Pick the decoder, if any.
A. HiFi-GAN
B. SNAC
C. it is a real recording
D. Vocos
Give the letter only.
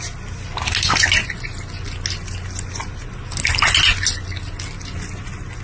C